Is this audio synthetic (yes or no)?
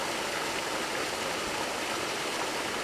no